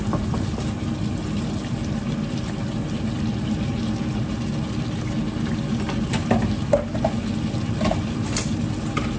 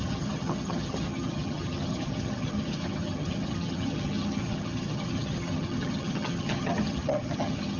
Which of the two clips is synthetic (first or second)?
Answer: second